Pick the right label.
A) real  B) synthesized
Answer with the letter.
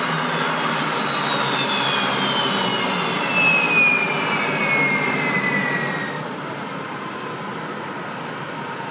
A